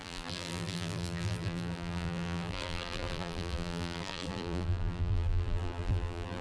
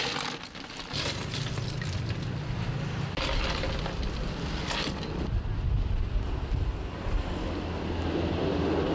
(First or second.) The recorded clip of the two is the second